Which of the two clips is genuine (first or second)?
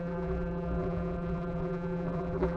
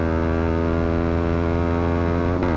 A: second